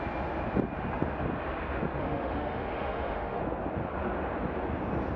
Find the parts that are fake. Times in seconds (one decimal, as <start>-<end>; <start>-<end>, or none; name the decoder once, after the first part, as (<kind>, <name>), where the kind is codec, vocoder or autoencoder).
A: 2.0-3.4 (autoencoder, DAC-VAE)